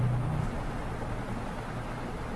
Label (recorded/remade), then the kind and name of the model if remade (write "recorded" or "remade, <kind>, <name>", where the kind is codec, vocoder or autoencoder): recorded